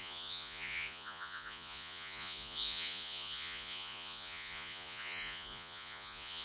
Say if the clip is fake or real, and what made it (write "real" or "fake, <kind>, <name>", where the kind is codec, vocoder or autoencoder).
fake, vocoder, Vocos